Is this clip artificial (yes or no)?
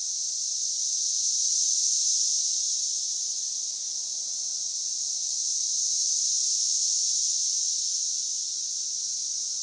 yes